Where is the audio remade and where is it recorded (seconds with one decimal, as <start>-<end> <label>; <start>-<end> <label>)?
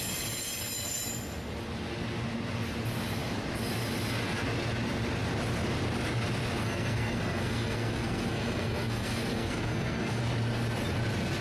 0.0-6.6 recorded; 6.6-10.2 remade; 10.2-11.4 recorded